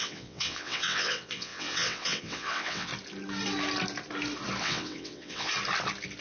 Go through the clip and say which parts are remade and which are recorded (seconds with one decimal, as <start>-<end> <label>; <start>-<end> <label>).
0.0-2.9 remade; 2.9-4.6 recorded; 4.6-5.5 remade; 5.5-6.2 recorded